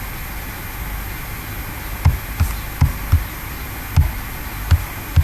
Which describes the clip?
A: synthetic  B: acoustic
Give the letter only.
B